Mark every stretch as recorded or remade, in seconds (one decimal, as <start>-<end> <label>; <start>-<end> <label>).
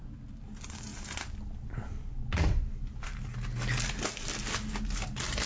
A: 0.0-5.5 recorded